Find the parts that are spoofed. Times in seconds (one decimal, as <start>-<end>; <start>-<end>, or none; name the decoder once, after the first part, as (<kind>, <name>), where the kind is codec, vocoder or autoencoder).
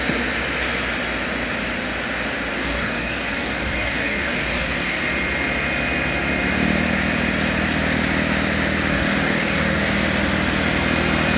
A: 2.5-5.1 (codec, DAC); 8.9-9.9